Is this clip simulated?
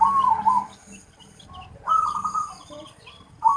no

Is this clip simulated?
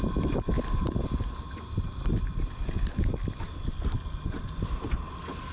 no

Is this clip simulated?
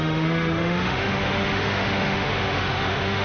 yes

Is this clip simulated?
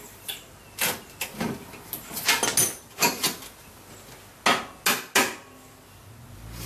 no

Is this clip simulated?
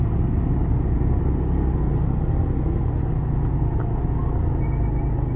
no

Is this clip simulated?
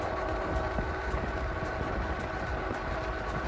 no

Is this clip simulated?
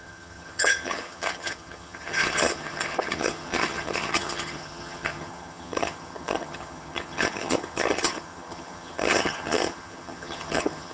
yes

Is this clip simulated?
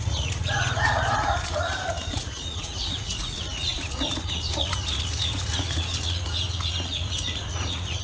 yes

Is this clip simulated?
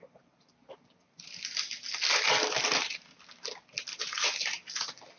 no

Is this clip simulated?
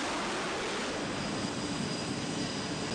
no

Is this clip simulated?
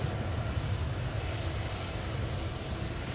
no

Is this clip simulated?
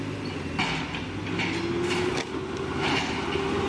no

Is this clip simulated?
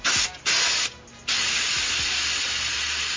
no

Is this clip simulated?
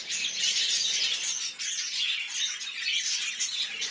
no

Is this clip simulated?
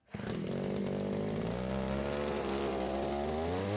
no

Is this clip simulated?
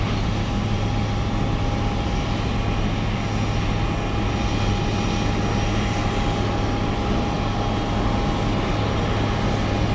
no